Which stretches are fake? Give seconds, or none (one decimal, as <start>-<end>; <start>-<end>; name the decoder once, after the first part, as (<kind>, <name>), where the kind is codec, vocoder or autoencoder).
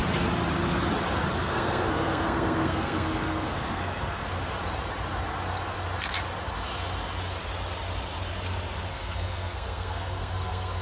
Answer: 1.4-4.2 (codec, SNAC); 8.9-10.8